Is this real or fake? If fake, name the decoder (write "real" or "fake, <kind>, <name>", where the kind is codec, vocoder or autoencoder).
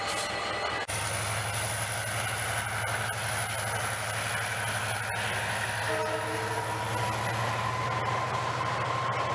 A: real